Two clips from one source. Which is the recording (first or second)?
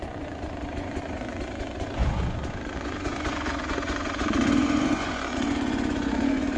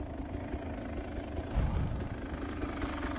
second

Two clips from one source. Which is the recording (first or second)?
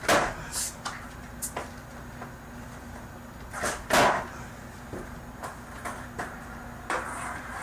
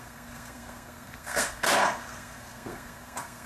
first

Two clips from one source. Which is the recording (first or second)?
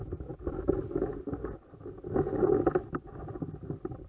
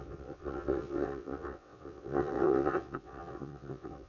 first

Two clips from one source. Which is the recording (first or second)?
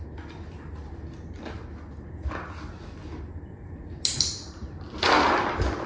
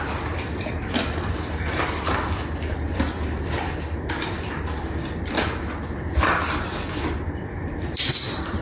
first